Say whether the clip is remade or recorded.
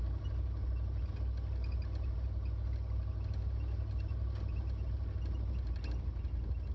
recorded